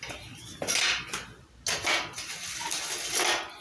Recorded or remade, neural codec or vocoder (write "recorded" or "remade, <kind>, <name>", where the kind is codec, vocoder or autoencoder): recorded